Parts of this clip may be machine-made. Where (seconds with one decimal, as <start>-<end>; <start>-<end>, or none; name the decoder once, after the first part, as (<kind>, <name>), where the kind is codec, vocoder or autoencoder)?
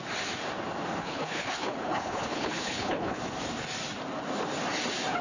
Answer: 1.0-3.2 (codec, HILCodec)